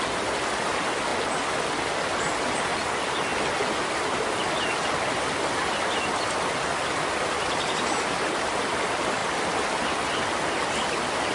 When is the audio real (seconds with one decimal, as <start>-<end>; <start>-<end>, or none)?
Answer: 0.0-11.3